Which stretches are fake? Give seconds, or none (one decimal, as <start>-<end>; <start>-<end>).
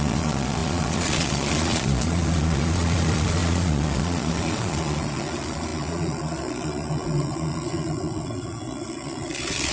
0.0-9.7